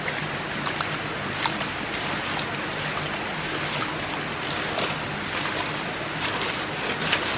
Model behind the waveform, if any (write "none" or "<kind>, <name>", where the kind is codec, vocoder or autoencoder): none